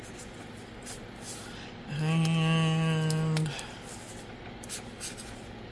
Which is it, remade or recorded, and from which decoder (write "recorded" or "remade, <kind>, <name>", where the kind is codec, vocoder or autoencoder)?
recorded